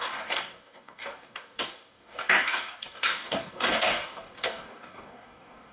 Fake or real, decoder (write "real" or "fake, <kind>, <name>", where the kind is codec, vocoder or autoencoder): fake, codec, DAC